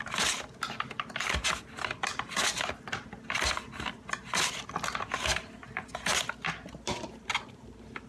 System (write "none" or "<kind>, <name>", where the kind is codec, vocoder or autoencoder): none